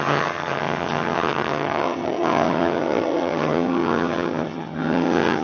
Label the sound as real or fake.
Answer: fake